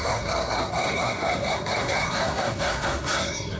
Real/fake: fake